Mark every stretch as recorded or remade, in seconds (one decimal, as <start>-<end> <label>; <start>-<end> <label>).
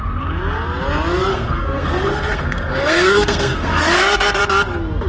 0.0-1.3 recorded; 1.3-4.4 remade; 4.4-5.1 recorded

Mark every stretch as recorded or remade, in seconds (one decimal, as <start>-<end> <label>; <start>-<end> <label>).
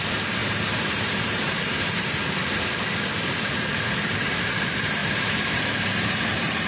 0.0-0.4 recorded; 0.4-1.5 remade; 1.5-5.0 recorded; 5.0-6.7 remade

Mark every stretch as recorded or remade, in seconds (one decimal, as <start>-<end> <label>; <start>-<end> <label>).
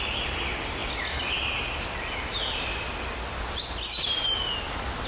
0.0-5.1 recorded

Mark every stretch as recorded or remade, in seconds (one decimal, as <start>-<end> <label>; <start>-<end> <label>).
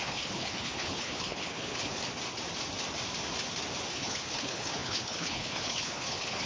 0.0-2.0 remade; 2.0-3.9 recorded; 3.9-6.5 remade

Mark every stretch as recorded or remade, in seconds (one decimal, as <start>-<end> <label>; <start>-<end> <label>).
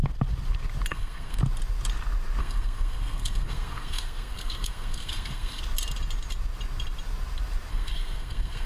0.0-0.9 recorded; 0.9-1.4 remade; 1.4-2.4 recorded; 2.4-5.6 remade; 5.6-7.7 recorded; 7.7-8.7 remade